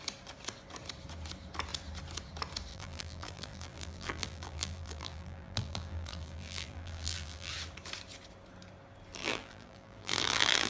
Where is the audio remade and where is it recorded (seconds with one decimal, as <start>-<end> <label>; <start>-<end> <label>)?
0.0-2.7 recorded; 2.7-7.5 remade; 7.5-9.2 recorded; 9.2-10.7 remade